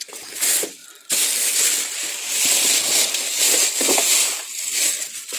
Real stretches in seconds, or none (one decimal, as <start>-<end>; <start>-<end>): 0.0-5.4